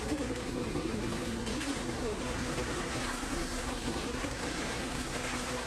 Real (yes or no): no